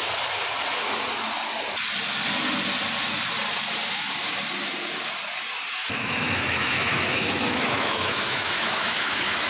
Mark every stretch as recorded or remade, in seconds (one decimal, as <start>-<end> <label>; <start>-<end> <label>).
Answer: 0.0-5.8 recorded; 5.8-9.5 remade